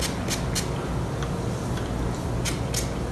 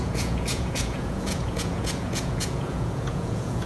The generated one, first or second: second